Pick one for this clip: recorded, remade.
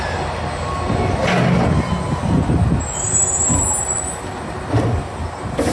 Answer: recorded